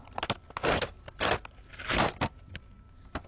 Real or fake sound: real